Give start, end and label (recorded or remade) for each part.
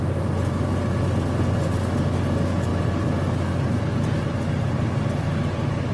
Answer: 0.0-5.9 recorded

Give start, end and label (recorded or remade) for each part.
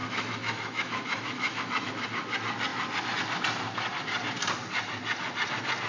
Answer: 0.0-1.9 remade; 1.9-5.9 recorded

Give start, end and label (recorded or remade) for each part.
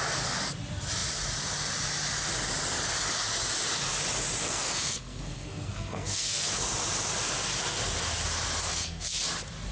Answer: 0.0-4.4 recorded; 4.4-6.6 remade; 6.6-8.6 recorded; 8.6-9.2 remade; 9.2-9.7 recorded